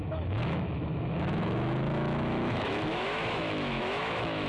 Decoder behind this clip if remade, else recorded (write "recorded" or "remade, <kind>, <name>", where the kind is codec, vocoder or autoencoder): remade, autoencoder, DAC-VAE